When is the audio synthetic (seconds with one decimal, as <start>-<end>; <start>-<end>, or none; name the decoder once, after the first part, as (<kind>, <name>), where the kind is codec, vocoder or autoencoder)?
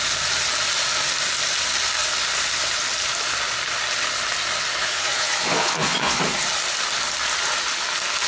4.8-6.2 (vocoder, Vocos)